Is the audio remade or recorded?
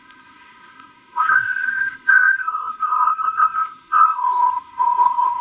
remade